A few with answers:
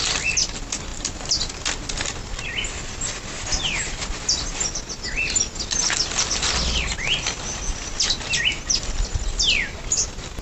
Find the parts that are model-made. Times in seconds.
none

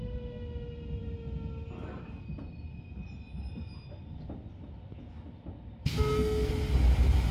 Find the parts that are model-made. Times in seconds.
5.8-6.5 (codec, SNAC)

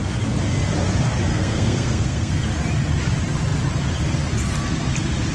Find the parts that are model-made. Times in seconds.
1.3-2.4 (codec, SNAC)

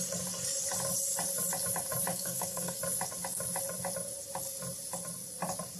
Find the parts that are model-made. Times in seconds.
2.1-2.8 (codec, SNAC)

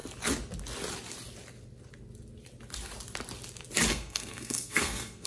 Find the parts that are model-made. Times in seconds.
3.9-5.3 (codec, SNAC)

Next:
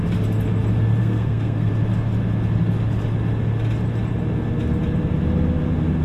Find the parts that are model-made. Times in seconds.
1.0-1.7 (codec, SNAC)